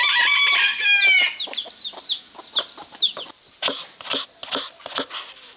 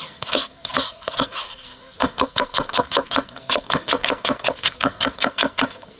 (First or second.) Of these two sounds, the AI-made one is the second